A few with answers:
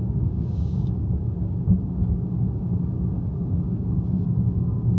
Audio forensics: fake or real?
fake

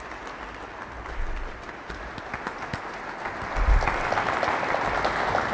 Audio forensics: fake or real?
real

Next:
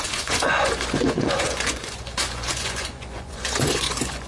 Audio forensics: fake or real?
fake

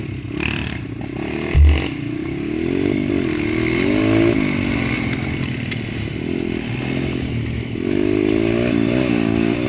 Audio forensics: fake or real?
real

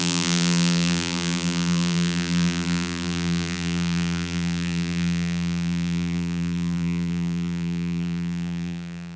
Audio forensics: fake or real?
fake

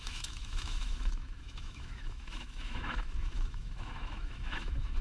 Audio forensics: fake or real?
fake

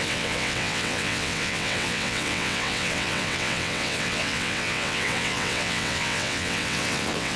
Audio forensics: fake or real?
fake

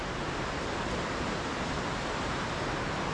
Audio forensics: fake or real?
real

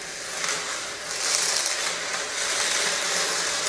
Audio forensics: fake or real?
real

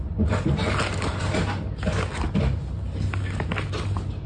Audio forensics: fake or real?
real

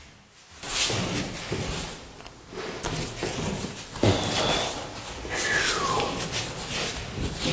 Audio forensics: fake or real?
real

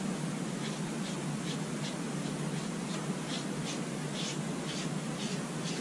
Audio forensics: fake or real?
real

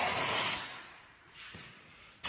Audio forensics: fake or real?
fake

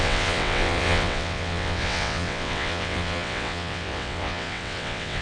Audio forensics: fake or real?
fake